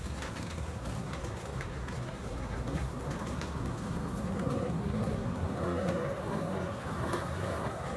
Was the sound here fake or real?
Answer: fake